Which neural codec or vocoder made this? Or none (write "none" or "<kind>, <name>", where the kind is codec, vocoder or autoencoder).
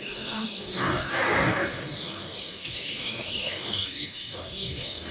codec, DAC